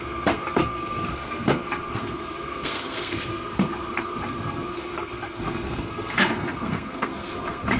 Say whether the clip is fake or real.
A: fake